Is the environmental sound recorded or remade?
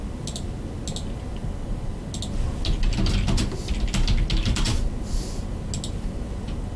recorded